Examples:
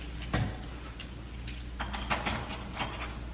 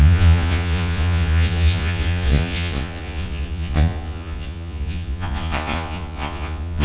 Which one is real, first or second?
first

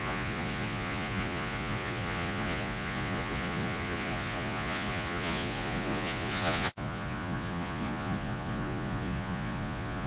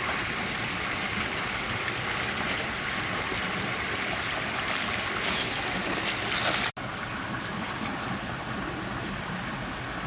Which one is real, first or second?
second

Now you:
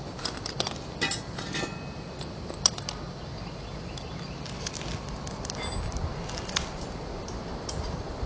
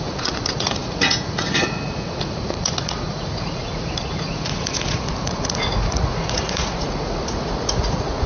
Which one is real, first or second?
first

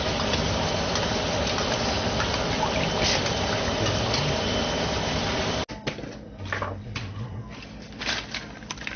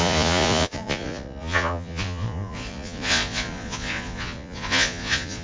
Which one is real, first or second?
first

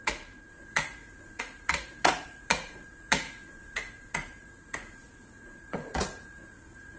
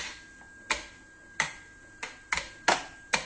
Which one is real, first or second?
second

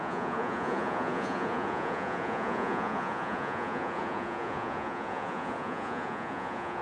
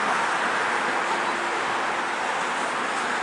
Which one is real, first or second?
second